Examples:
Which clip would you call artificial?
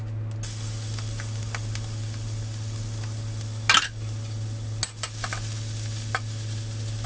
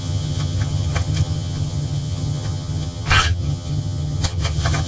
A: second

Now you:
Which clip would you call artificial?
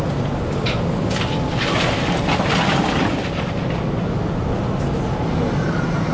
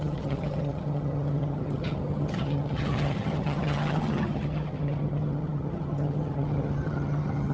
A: second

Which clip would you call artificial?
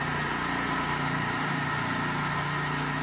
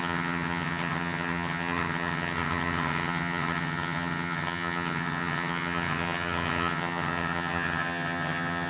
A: second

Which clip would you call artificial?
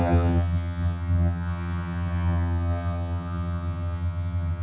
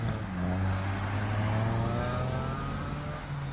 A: first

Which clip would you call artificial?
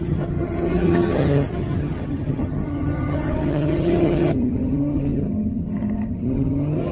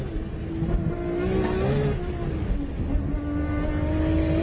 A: first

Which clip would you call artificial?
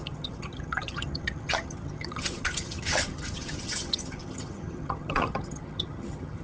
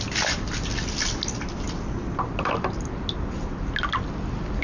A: first